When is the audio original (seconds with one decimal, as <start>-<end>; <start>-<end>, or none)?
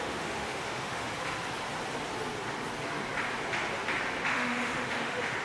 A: 1.1-4.3